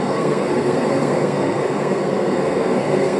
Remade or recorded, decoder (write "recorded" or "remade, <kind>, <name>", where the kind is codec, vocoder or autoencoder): remade, codec, SNAC